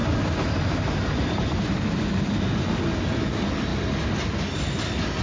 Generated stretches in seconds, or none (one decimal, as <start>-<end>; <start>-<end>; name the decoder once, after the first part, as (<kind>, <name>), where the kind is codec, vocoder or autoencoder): none